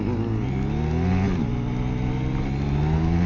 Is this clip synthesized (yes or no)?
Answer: no